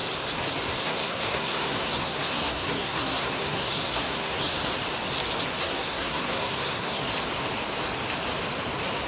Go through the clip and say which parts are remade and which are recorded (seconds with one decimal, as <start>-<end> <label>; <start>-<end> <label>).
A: 0.0-0.8 recorded; 0.8-4.7 remade; 4.7-5.6 recorded; 5.6-7.0 remade; 7.0-9.1 recorded